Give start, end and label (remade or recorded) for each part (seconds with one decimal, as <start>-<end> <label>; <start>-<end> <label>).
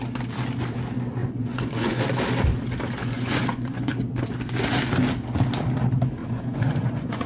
0.0-1.2 recorded; 1.2-2.0 remade; 2.0-3.0 recorded; 3.0-3.9 remade; 3.9-6.2 recorded; 6.2-7.3 remade